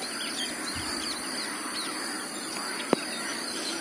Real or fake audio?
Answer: real